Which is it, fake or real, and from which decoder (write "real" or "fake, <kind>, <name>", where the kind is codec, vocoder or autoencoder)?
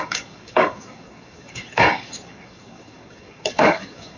fake, codec, DAC